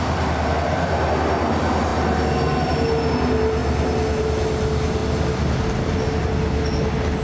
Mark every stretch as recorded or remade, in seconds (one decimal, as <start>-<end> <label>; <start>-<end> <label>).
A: 0.0-7.2 recorded